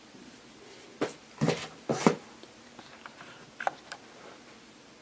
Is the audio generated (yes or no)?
no